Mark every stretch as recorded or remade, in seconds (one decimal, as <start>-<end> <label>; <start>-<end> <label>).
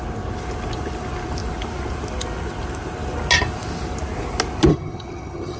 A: 0.0-4.7 recorded; 4.7-5.6 remade